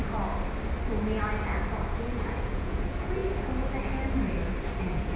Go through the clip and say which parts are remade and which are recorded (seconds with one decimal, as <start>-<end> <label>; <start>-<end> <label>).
0.0-2.0 recorded; 2.0-3.2 remade; 3.2-4.8 recorded; 4.8-5.2 remade